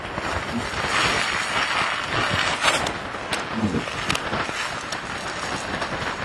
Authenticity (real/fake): real